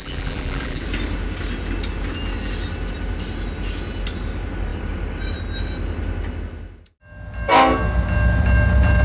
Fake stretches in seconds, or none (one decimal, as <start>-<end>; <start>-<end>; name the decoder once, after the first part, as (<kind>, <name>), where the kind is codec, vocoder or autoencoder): 0.0-0.8 (vocoder, BigVGAN v2)